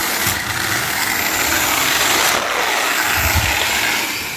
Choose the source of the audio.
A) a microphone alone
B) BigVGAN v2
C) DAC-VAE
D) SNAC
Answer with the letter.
A